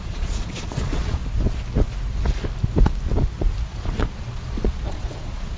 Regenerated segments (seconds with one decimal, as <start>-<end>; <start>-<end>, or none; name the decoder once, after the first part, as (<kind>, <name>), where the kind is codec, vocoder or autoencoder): 0.0-1.2 (vocoder, Vocos); 3.6-5.6